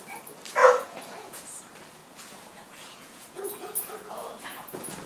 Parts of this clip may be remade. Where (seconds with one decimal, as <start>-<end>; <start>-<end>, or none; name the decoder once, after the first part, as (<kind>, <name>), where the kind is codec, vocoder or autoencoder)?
0.6-1.6 (vocoder, Vocos); 2.0-5.1

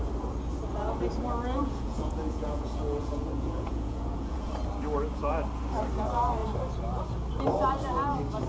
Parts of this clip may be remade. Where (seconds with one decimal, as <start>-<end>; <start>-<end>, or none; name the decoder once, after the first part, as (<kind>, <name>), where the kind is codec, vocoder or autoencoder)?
1.6-4.5 (vocoder, Vocos)

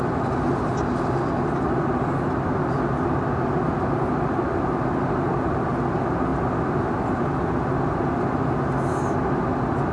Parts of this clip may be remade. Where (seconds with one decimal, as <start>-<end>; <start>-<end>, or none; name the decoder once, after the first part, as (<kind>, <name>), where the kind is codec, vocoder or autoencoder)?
none

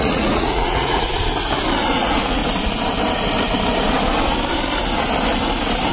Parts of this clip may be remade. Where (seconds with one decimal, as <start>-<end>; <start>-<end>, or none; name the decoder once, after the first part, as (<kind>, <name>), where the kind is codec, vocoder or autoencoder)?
0.0-1.1 (vocoder, Vocos); 1.9-2.4

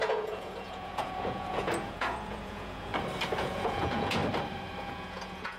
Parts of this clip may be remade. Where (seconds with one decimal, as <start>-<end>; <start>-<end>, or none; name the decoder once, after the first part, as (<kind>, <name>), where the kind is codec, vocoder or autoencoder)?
0.0-2.9 (vocoder, Vocos); 3.4-4.2; 4.8-5.6

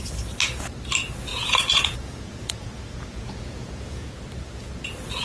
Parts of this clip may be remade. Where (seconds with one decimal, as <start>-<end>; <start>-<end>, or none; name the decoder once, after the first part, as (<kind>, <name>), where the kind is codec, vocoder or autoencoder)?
1.3-4.1 (vocoder, Vocos)